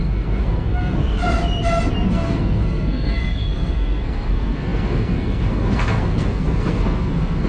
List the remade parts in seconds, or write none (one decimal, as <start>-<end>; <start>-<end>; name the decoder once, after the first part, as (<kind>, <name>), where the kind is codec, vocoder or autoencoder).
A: 0.0-1.2 (codec, SNAC); 1.9-7.5